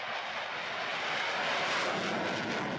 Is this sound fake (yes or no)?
no